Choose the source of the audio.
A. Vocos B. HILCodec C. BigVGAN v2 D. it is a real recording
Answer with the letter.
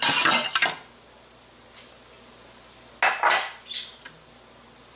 D